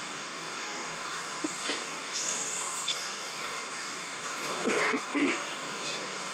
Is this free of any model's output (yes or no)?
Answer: no